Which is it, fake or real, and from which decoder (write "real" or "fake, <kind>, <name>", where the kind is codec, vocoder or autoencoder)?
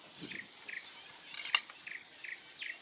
real